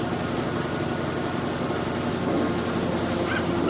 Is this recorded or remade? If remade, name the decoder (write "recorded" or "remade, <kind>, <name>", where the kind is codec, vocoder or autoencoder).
recorded